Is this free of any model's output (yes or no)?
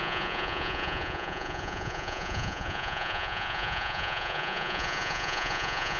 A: no